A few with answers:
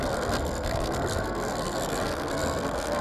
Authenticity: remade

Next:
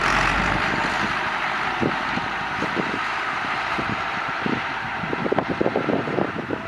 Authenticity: remade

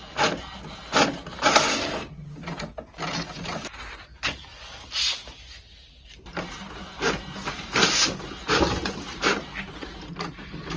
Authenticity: recorded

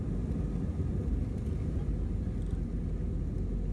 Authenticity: recorded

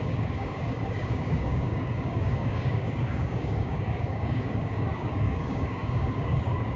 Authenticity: remade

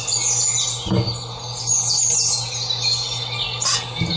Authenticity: recorded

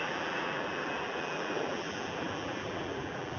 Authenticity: remade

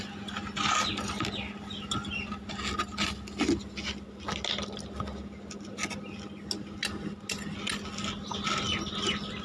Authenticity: recorded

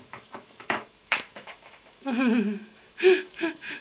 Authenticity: remade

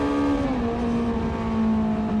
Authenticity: recorded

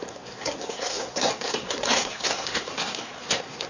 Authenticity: remade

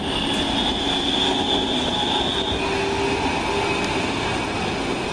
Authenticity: recorded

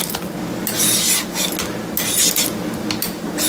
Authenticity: recorded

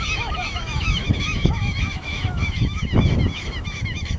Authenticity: remade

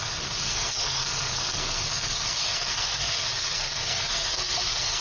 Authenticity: remade